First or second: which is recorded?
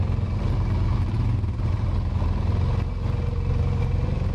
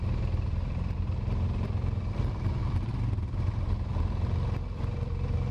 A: first